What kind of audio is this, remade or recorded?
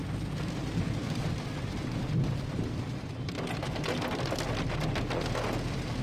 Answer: recorded